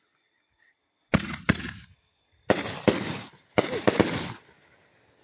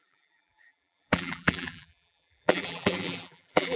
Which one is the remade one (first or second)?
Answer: second